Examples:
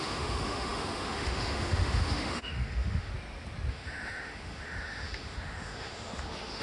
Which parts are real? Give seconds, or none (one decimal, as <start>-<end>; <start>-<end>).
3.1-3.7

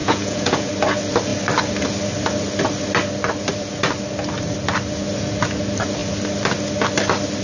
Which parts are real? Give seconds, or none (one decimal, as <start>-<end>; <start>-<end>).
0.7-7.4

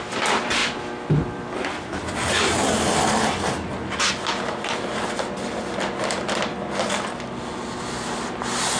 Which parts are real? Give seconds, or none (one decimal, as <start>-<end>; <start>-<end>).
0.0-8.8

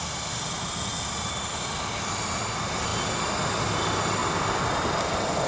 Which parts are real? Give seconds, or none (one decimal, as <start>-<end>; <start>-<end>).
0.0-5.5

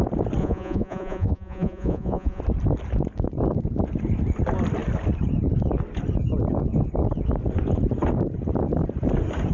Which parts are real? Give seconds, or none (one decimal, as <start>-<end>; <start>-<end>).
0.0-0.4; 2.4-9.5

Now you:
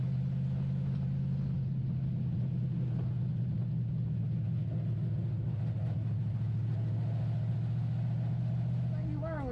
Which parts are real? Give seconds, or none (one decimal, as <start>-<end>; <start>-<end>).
0.0-9.5